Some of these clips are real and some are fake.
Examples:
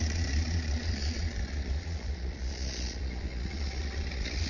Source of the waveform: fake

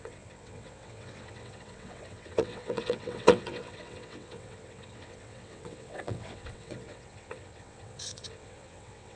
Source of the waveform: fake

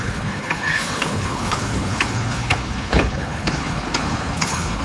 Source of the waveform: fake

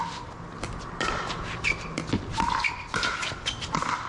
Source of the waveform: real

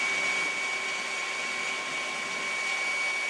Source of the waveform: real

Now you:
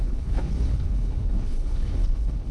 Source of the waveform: fake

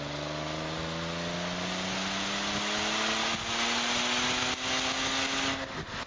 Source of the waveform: real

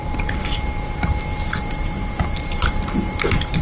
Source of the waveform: fake